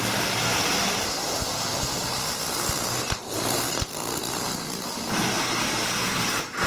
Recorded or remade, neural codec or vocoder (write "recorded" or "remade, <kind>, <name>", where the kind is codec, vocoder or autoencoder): recorded